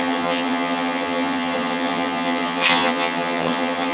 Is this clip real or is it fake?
fake